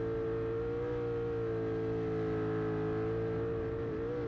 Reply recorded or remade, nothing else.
recorded